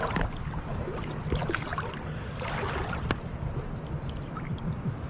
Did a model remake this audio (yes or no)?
no